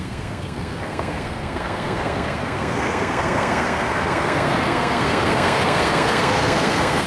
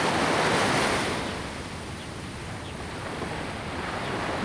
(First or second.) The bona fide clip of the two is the second